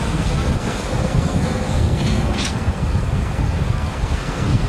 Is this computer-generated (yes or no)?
yes